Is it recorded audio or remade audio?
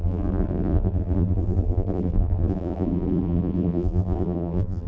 remade